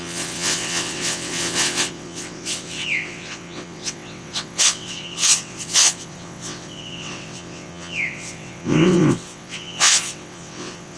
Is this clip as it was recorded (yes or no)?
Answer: no